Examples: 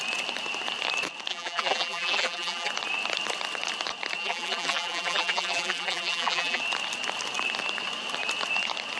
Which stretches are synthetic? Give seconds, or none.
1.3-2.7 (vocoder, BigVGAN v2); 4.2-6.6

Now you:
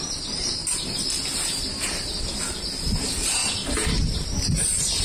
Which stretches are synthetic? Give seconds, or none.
0.0-0.6 (vocoder, BigVGAN v2); 3.0-3.4

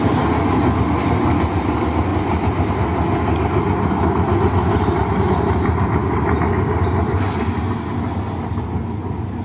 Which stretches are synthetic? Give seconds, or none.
2.1-2.7 (vocoder, BigVGAN v2)

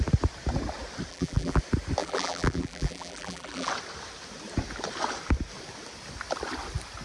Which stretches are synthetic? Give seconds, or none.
1.1-1.6 (vocoder, BigVGAN v2); 2.0-3.7